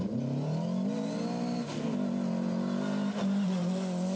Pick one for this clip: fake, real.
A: real